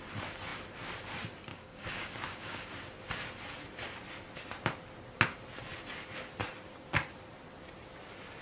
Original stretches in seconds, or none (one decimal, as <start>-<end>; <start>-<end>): 0.0-1.5; 2.7-8.4